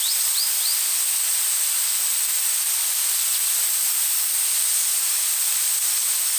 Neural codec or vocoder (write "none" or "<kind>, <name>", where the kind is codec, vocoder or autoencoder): none